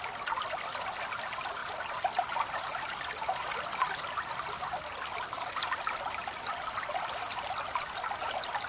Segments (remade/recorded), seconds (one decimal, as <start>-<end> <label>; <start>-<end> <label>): 0.0-8.7 recorded